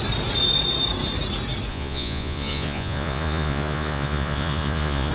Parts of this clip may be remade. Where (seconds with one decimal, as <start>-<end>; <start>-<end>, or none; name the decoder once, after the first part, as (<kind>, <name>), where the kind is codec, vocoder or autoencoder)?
1.7-5.1 (vocoder, Vocos)